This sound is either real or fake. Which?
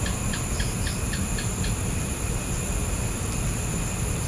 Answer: fake